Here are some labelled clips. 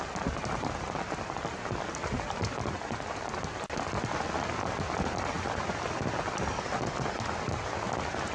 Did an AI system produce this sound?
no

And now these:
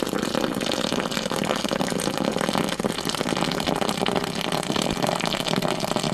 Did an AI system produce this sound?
no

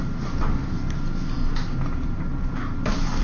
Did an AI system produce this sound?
no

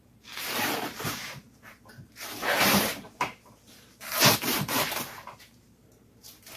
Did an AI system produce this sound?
yes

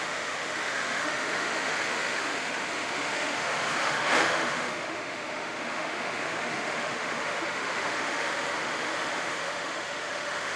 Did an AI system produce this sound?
yes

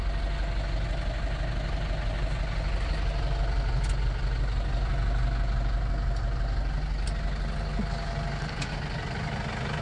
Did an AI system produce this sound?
no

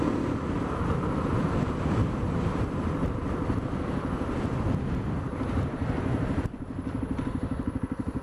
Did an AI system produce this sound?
yes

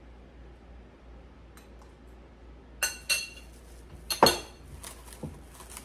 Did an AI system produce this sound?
no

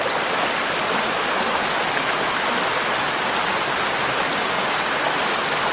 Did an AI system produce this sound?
no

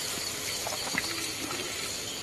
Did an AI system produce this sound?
no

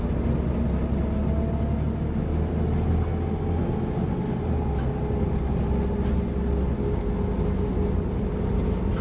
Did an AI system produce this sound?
no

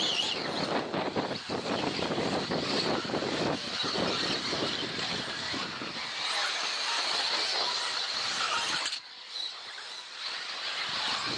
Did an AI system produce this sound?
no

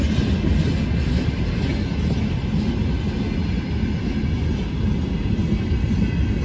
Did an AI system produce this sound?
no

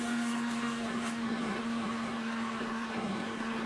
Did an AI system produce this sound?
yes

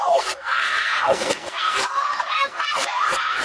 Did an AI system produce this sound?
yes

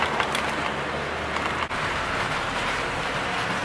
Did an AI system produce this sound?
yes